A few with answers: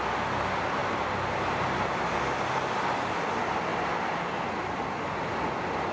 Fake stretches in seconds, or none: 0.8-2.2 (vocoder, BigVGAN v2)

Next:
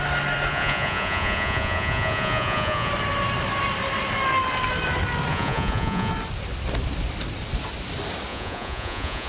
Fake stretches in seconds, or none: 0.5-2.9 (vocoder, Vocos); 5.3-6.1; 8.3-9.3

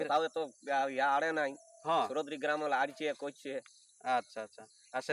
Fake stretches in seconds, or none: none

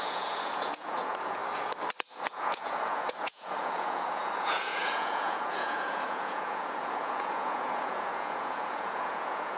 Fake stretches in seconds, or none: 0.0-1.4 (vocoder, Vocos); 2.1-9.6